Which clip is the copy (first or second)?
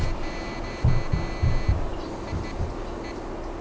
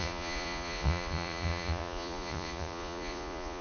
second